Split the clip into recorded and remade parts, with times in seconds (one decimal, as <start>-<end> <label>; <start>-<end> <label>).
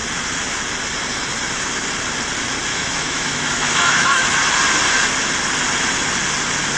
0.0-2.7 recorded; 2.7-4.4 remade; 4.4-6.8 recorded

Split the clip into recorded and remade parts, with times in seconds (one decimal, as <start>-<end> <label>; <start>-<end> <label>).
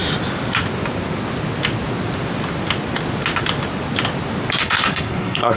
0.0-4.6 recorded; 4.6-5.6 remade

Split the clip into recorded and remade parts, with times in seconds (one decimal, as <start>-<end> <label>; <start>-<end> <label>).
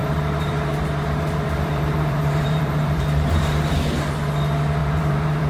0.0-3.3 remade; 3.3-4.8 recorded; 4.8-5.5 remade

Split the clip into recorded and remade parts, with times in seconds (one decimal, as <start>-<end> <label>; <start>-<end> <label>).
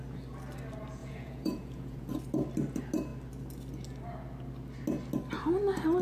0.0-1.0 recorded; 1.0-2.1 remade; 2.1-6.0 recorded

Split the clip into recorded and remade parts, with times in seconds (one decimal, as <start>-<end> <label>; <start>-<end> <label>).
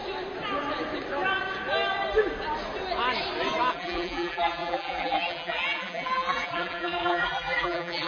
0.0-3.7 recorded; 3.7-8.1 remade